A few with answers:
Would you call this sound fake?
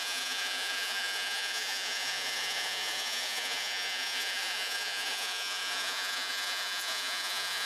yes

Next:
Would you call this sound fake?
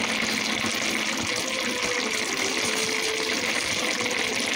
no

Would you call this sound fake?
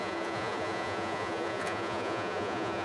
yes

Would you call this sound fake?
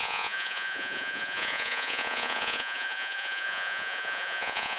yes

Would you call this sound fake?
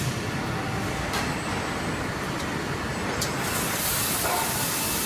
no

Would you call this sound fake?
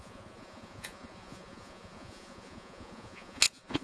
yes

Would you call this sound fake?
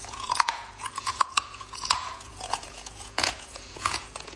yes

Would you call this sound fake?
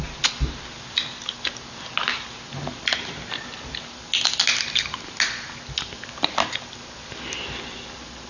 no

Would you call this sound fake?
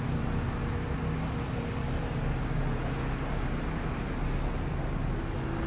no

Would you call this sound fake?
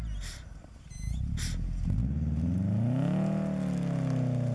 no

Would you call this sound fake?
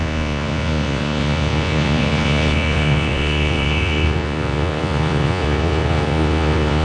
yes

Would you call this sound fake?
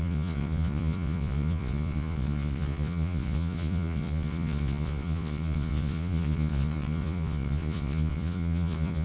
yes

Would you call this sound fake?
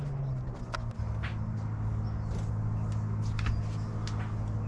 no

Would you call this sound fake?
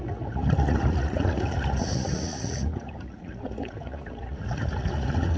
yes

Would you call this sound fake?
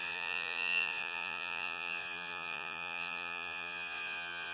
yes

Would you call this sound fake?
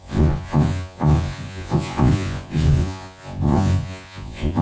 yes